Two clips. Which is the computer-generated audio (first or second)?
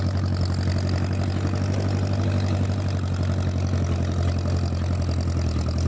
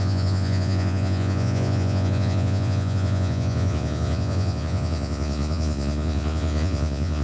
second